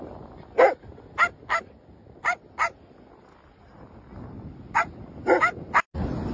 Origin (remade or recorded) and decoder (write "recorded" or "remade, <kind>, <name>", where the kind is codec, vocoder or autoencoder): recorded